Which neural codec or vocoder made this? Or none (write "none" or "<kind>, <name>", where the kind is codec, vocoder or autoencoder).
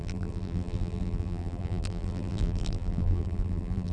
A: vocoder, BigVGAN v2